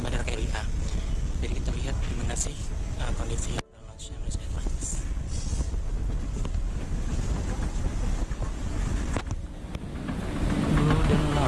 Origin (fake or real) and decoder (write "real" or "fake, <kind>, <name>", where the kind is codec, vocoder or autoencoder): real